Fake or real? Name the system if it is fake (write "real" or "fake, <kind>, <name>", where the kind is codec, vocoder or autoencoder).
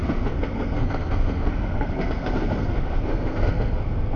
fake, codec, SNAC